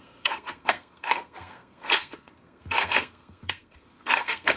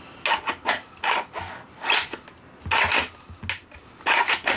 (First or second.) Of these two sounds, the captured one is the second